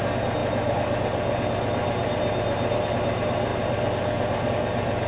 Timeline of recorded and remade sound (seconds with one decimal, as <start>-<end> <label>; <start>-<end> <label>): 0.0-5.1 recorded